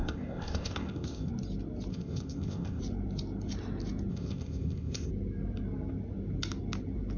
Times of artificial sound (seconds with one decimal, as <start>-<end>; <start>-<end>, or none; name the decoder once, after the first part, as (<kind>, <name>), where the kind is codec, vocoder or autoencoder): 0.0-1.3 (codec, ZipCodec); 1.9-2.8; 4.1-5.1

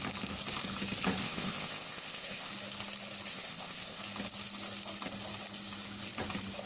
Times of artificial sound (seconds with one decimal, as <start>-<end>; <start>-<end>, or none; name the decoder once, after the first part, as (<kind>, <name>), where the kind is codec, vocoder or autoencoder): 1.2-2.5 (codec, ZipCodec); 3.3-4.0

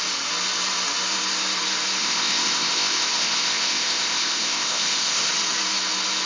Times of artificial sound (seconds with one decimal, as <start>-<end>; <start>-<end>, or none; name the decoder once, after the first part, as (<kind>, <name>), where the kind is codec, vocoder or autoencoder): 2.0-5.3 (codec, ZipCodec)

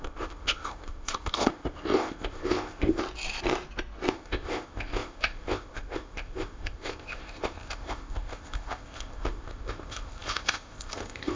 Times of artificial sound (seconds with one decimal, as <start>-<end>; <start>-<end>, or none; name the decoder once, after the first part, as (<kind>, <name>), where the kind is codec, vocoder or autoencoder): 0.0-3.0 (codec, ZipCodec); 4.1-11.4

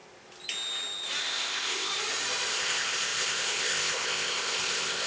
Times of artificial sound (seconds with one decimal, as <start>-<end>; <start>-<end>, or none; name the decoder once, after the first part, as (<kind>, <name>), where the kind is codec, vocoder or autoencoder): 1.2-1.9 (codec, ZipCodec); 2.5-5.1